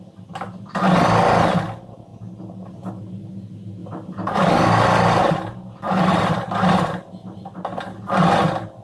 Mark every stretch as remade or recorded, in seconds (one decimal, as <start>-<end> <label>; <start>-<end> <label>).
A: 0.0-5.2 recorded; 5.2-6.5 remade; 6.5-8.8 recorded